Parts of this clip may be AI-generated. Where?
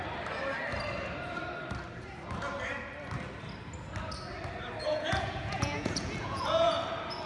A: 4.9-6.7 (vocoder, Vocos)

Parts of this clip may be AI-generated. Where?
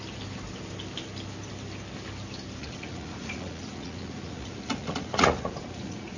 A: 2.6-6.2 (vocoder, Vocos)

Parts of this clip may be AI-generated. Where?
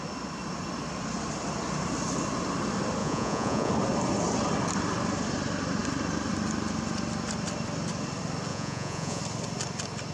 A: 3.0-3.7 (vocoder, Vocos); 8.5-9.2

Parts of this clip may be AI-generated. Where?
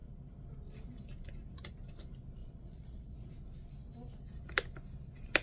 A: 2.4-3.3 (vocoder, Vocos)